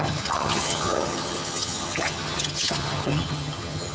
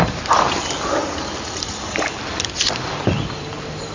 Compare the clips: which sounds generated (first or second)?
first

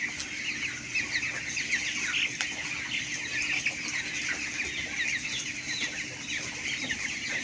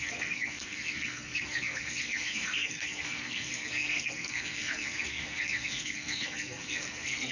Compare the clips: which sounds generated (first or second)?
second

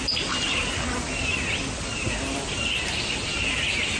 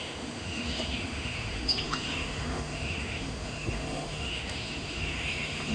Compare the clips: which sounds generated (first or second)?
second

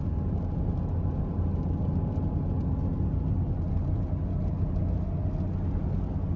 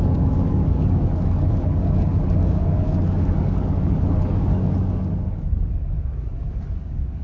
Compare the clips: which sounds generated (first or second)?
second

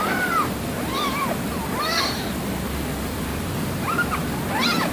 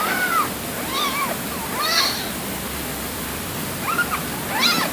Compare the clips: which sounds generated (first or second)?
first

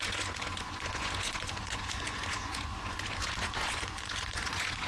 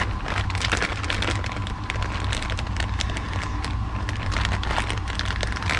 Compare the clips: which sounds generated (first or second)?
first